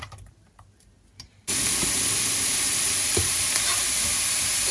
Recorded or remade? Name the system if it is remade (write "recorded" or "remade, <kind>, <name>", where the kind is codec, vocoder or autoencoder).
recorded